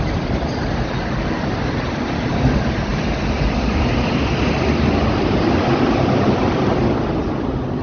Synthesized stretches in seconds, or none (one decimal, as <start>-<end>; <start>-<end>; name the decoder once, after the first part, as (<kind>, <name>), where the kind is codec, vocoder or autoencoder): 0.0-7.8 (vocoder, BigVGAN v2)